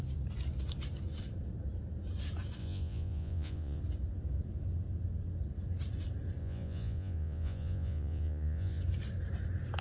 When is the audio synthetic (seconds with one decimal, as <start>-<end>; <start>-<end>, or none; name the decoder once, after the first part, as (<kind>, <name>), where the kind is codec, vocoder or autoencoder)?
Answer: 2.6-3.8 (vocoder, Vocos); 6.4-8.8